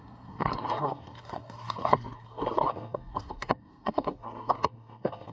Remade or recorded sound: remade